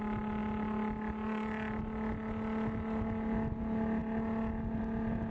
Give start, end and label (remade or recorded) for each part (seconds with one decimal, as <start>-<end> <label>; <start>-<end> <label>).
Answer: 0.0-5.3 recorded